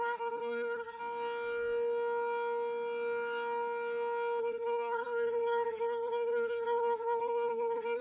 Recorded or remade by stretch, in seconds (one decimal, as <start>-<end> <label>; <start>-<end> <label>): 0.0-1.0 remade; 1.0-4.4 recorded; 4.4-8.0 remade